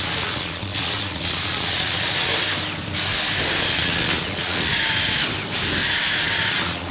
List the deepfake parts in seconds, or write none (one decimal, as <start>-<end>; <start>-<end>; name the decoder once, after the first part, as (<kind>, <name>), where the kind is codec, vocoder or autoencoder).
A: 0.0-2.3 (vocoder, Vocos); 3.7-4.7; 6.5-6.9